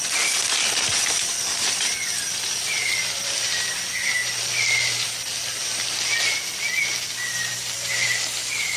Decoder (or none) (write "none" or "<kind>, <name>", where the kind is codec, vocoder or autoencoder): none